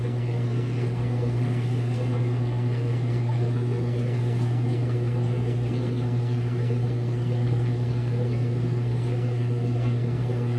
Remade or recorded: remade